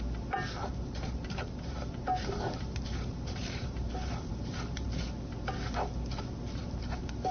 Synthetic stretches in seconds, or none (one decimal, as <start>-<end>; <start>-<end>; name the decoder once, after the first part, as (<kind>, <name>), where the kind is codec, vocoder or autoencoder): 0.6-5.0 (vocoder, BigVGAN v2); 6.6-7.3